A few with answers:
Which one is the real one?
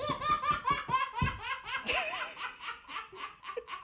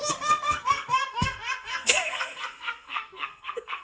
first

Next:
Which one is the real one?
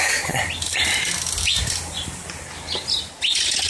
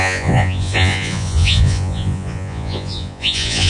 first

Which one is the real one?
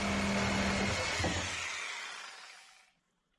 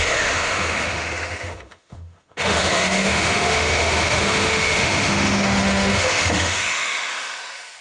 first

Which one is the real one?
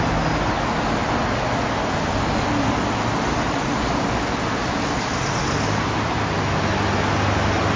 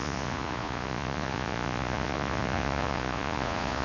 first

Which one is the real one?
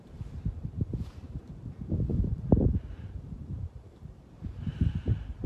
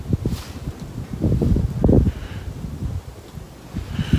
second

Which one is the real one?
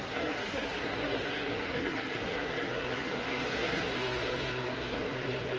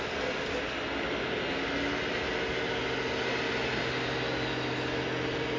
second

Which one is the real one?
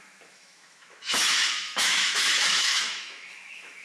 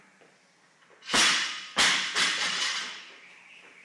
second